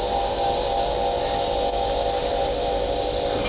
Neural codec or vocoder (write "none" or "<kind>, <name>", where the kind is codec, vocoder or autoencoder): none